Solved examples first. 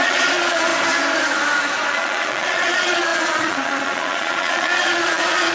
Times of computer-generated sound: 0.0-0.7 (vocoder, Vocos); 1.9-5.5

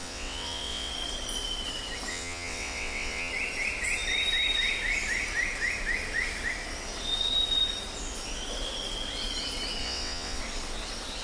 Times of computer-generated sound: 0.0-0.9 (vocoder, WaveNeXt); 2.1-3.3; 9.8-10.4